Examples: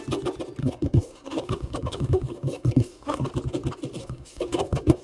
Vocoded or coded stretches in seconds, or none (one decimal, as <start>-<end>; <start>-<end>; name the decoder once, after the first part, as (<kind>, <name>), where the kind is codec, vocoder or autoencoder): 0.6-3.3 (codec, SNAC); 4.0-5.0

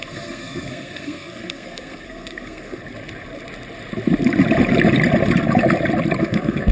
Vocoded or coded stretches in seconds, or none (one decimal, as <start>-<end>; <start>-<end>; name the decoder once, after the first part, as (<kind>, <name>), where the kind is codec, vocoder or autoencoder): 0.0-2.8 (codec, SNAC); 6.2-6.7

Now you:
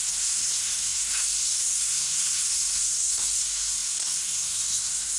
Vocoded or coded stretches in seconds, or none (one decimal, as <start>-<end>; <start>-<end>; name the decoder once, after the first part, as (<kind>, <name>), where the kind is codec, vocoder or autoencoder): 0.0-5.2 (codec, SNAC)